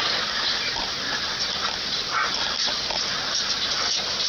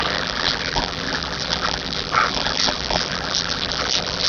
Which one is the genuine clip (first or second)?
first